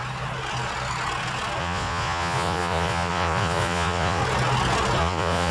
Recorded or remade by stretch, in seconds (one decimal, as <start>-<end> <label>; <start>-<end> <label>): 0.0-1.6 recorded; 1.6-4.2 remade; 4.2-5.0 recorded; 5.0-5.5 remade